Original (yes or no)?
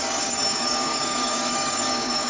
no